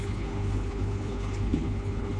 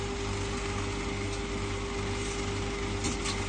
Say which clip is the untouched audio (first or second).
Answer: second